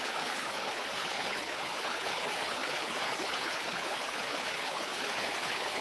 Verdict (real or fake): fake